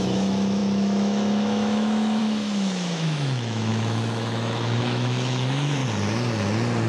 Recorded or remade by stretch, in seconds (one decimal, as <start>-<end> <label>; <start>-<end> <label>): 0.0-5.8 remade; 5.8-6.9 recorded